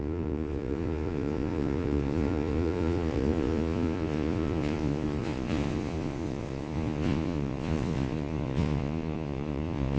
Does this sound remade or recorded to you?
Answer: remade